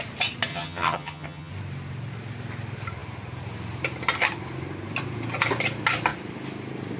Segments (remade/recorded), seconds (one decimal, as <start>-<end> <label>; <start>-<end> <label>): 0.0-0.5 recorded; 0.5-1.5 remade; 1.5-7.0 recorded

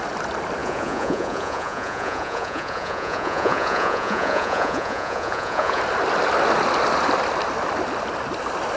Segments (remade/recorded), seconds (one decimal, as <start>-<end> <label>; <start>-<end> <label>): 0.0-0.6 recorded; 0.6-5.8 remade; 5.8-8.8 recorded

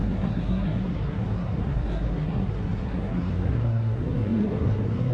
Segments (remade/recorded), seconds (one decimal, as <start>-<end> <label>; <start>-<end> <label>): 0.0-5.1 remade